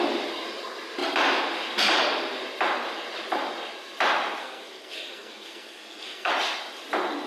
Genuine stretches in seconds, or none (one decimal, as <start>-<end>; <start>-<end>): 0.0-4.4; 6.3-7.3